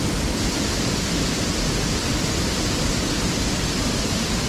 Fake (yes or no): yes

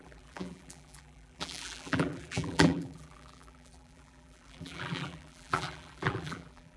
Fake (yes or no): yes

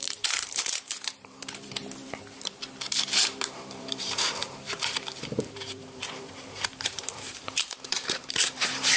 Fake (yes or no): yes